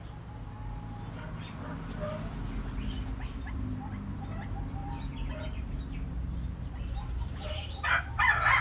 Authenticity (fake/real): real